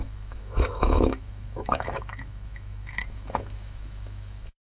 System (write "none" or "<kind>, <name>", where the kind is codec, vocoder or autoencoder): autoencoder, DAC-VAE